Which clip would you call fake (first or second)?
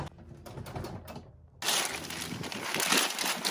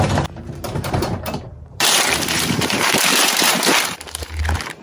second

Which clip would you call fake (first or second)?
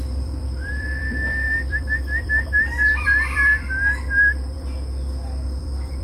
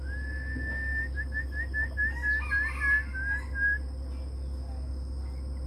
first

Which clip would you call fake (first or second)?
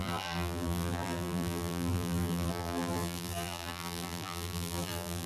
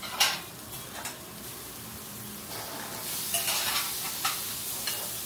first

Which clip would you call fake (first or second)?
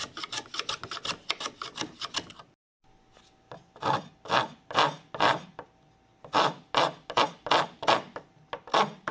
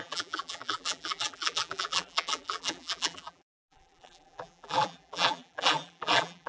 second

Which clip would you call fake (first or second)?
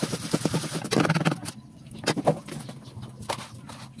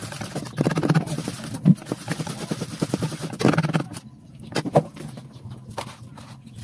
second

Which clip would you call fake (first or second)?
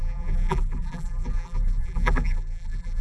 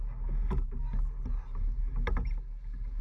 first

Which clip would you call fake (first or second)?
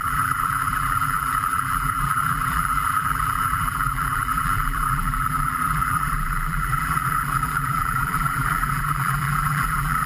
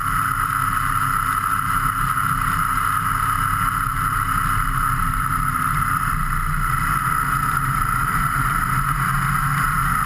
first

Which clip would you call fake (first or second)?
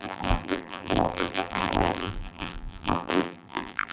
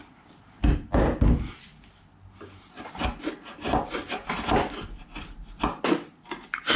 first